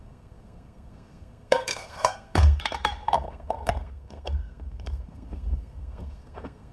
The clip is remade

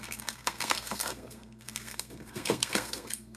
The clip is remade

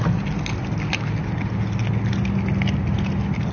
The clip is recorded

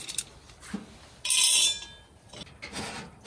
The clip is recorded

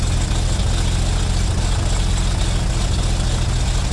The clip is recorded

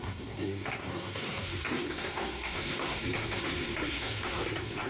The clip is remade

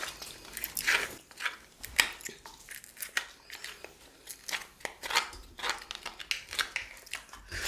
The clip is recorded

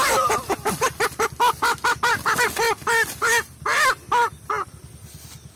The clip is recorded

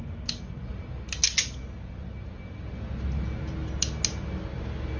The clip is recorded